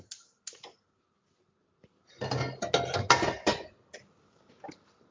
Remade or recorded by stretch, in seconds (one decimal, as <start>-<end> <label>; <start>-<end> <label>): 0.0-5.1 recorded